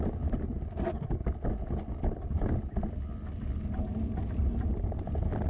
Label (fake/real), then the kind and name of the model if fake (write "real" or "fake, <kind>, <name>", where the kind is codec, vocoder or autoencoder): real